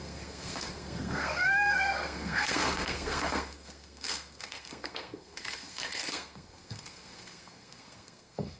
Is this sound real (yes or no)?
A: no